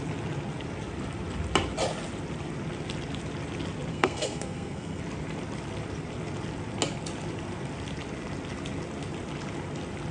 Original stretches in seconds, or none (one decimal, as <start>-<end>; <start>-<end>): 0.0-3.9; 5.0-10.1